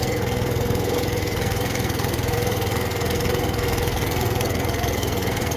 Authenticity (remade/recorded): remade